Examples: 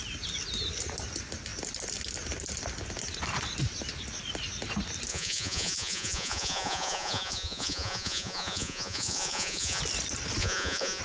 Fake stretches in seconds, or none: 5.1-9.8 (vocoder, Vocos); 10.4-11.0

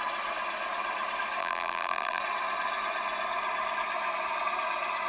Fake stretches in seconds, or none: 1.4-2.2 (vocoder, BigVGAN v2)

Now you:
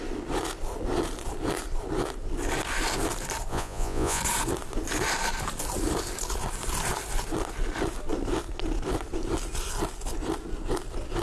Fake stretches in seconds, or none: 3.5-4.2 (vocoder, Vocos)

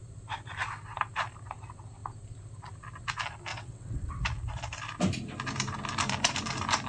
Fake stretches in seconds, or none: 3.5-4.1 (vocoder, WaveNeXt)